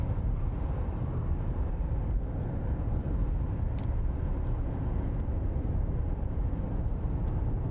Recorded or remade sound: recorded